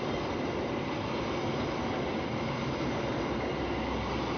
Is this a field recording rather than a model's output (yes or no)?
yes